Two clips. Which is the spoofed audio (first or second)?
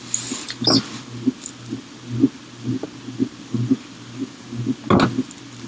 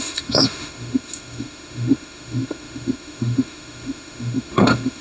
second